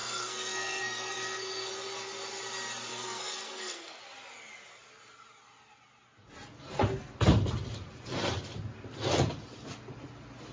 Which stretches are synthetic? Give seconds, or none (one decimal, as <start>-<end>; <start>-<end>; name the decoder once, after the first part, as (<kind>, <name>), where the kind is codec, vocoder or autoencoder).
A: 0.0-1.7 (codec, SNAC); 2.9-4.0